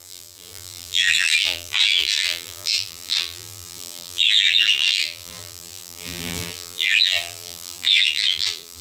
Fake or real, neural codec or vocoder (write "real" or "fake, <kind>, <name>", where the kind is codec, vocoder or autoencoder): fake, vocoder, BigVGAN v2